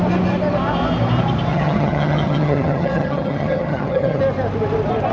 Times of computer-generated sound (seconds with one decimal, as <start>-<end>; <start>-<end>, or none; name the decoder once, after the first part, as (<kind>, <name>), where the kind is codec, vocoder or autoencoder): 1.5-4.2 (vocoder, HiFi-GAN)